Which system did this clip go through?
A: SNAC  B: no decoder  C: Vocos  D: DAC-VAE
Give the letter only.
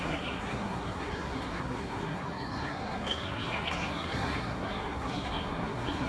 A